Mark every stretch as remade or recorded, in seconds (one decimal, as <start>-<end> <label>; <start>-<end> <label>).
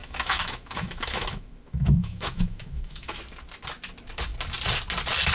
0.0-3.2 remade; 3.2-5.3 recorded